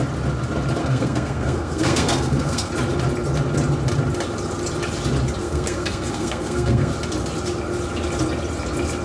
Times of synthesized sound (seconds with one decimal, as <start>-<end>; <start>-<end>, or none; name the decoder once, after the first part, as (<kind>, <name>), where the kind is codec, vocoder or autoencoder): 0.8-2.7 (codec, SNAC); 5.4-6.9